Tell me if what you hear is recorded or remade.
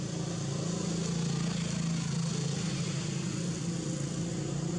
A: recorded